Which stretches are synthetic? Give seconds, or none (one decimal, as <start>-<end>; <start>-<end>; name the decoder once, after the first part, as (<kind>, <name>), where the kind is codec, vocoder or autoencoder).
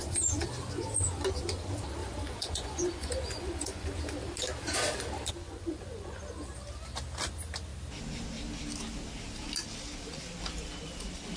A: 2.0-4.0 (vocoder, Vocos); 5.4-6.2